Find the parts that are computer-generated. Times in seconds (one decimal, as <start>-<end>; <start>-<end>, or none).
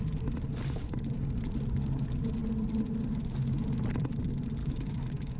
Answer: 4.6-5.4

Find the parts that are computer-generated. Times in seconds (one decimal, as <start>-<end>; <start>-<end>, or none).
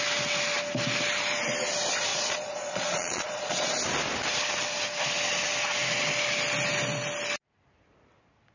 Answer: 2.1-3.8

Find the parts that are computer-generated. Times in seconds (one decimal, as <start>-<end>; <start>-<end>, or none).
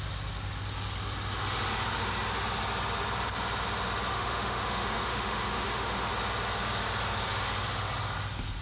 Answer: 4.1-6.1